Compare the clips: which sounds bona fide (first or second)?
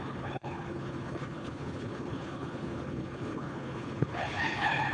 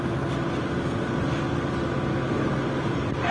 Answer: second